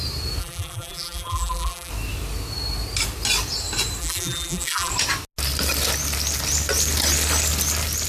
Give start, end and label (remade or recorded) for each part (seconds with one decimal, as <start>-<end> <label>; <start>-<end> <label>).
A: 0.0-0.4 recorded; 0.4-1.9 remade; 1.9-4.0 recorded; 4.0-4.9 remade; 4.9-8.1 recorded